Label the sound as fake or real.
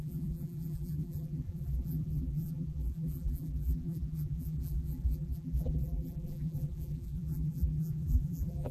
fake